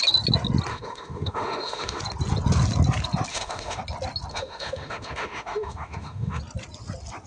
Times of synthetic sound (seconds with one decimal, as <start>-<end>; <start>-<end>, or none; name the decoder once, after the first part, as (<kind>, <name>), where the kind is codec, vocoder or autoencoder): 0.7-2.0 (autoencoder, DAC-VAE); 3.3-3.8; 4.3-6.4